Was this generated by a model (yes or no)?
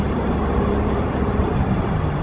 yes